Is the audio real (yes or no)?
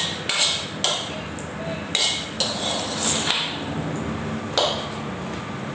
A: yes